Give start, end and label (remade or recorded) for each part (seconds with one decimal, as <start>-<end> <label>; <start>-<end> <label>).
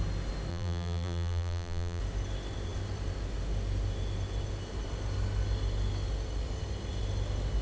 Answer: 0.0-0.5 recorded; 0.5-2.0 remade; 2.0-7.6 recorded